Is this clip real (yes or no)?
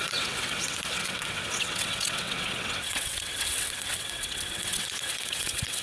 no